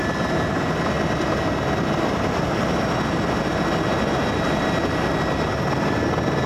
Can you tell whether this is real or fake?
real